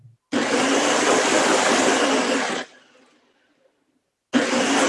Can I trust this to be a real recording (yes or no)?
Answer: yes